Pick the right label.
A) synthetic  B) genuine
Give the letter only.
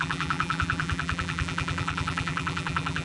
A